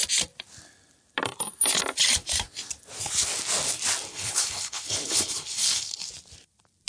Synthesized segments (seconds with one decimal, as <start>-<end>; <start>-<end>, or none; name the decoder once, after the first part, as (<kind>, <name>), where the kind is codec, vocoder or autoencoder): 4.1-6.1 (codec, HILCodec)

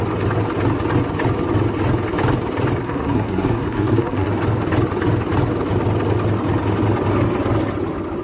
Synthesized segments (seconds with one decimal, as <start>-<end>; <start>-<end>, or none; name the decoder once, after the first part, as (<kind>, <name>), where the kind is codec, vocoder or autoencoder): 2.8-4.3 (codec, SNAC)

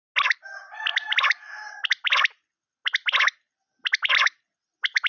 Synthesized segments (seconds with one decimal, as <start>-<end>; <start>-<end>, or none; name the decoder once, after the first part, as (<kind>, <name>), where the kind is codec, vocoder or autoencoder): none